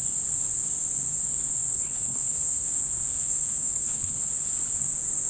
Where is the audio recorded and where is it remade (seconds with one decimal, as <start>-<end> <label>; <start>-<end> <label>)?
0.0-1.7 recorded; 1.7-2.8 remade; 2.8-3.2 recorded; 3.2-4.3 remade; 4.3-5.3 recorded